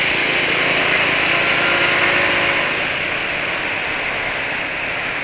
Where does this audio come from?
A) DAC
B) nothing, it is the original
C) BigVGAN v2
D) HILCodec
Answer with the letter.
B